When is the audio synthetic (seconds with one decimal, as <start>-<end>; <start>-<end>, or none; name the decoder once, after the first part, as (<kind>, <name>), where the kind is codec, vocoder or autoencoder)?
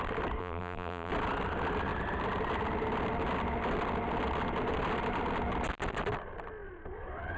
0.4-1.1 (vocoder, BigVGAN v2)